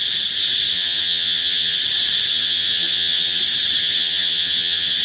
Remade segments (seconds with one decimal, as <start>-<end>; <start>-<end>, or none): 0.7-1.8; 2.3-3.4; 3.8-5.0